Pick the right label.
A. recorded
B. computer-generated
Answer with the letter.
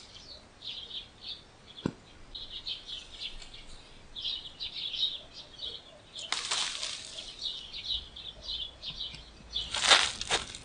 A